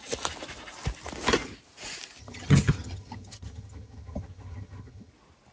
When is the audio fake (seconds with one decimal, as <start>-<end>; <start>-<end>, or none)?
2.2-5.1